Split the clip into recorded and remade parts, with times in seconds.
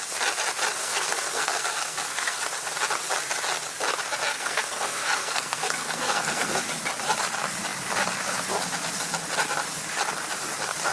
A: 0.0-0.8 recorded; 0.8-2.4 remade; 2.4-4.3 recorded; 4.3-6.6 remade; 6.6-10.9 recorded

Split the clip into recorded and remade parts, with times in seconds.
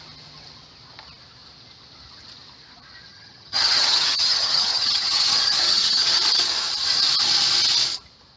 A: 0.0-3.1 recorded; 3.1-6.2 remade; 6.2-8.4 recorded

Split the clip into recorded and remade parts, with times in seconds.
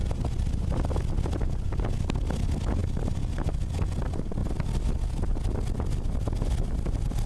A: 0.0-7.3 recorded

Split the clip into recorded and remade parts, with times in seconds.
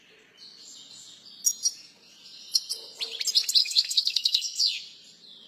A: 0.0-3.6 recorded; 3.6-4.6 remade; 4.6-5.5 recorded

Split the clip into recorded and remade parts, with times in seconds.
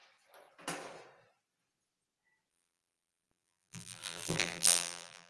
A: 0.0-2.5 recorded; 2.5-5.3 remade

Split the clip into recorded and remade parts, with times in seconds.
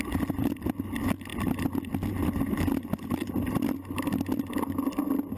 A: 0.0-5.4 recorded